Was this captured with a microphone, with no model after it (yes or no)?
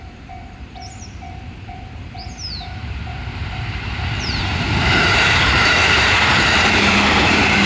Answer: no